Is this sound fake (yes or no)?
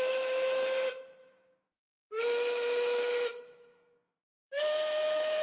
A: yes